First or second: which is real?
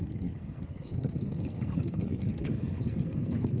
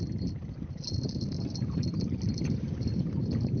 second